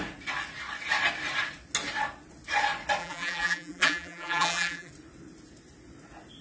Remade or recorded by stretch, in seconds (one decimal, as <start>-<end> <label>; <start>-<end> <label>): 0.0-3.0 recorded; 3.0-4.9 remade; 4.9-6.4 recorded